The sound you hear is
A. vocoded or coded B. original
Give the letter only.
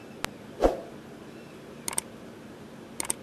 B